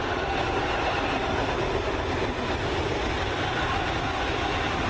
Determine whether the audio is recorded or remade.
recorded